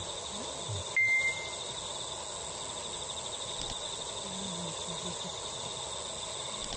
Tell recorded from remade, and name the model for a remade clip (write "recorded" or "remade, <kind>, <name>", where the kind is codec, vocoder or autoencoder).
recorded